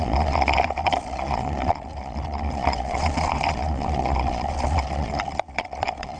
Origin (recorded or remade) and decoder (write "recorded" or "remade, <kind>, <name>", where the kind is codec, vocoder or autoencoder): remade, vocoder, Vocos